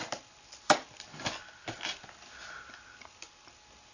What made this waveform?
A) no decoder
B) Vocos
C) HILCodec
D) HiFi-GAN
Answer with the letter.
A